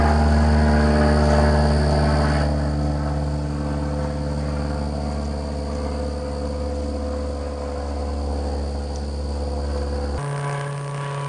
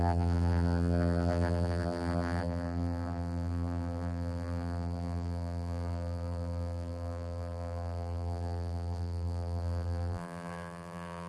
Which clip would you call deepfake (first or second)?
second